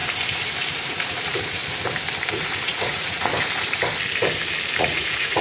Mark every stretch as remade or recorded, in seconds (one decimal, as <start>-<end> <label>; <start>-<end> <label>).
0.0-0.9 recorded; 0.9-1.6 remade; 1.6-2.3 recorded; 2.3-3.3 remade; 3.3-4.8 recorded; 4.8-5.4 remade